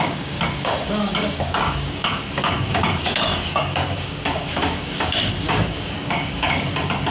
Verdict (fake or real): fake